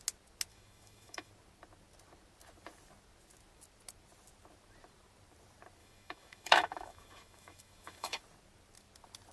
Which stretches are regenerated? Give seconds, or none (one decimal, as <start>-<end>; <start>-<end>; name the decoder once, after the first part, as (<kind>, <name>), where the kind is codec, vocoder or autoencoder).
0.5-1.3 (autoencoder, DAC-VAE); 5.8-8.2